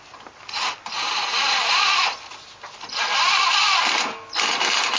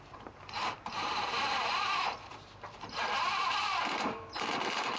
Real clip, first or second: first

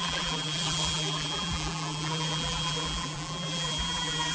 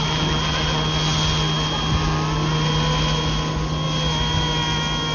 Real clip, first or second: second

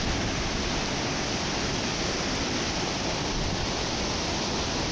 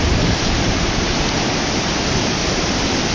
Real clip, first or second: first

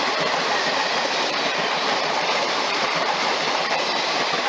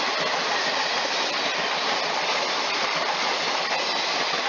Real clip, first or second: second